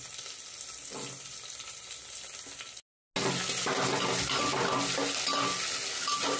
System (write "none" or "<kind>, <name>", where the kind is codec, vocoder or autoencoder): none